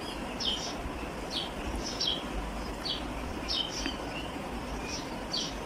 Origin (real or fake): real